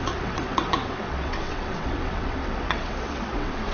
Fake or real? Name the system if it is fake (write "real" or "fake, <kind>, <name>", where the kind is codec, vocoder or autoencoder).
fake, vocoder, WaveNeXt